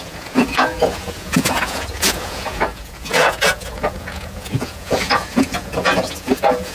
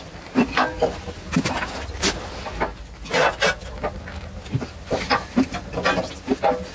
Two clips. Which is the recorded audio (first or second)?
second